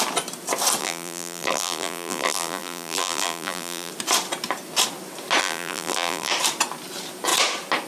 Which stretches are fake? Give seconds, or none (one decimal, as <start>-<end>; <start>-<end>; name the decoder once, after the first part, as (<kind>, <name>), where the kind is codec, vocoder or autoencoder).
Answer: 0.8-3.9 (vocoder, BigVGAN v2); 5.4-6.3